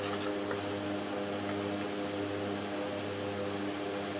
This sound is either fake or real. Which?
real